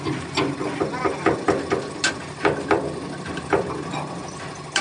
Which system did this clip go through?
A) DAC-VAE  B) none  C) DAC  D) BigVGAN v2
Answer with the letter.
B